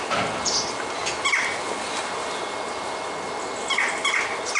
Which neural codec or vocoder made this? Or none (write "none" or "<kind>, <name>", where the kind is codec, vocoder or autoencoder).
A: none